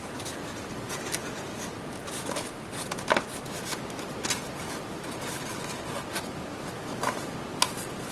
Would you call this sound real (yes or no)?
no